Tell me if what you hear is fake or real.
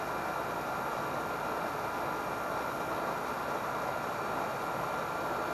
real